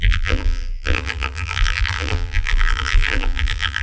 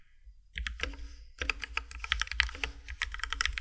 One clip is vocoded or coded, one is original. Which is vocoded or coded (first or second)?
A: first